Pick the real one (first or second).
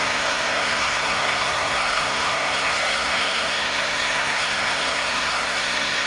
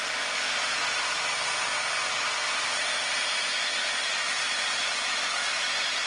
second